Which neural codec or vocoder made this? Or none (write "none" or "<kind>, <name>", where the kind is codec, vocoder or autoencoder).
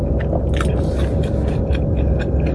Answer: none